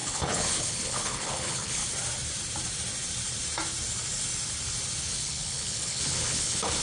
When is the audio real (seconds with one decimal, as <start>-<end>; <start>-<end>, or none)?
1.8-5.1